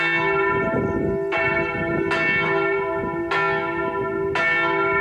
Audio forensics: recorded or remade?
recorded